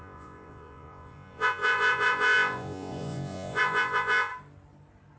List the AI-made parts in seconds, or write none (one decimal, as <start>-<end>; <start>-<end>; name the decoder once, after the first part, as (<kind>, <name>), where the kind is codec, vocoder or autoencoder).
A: 0.0-4.3 (vocoder, Vocos)